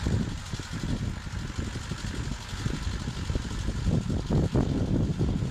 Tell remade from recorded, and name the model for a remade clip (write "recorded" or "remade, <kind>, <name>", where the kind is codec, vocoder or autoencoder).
recorded